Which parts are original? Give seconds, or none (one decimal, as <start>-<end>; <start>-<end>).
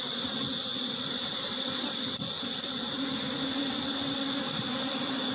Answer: 0.0-5.3